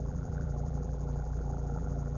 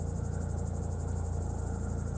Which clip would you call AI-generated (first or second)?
first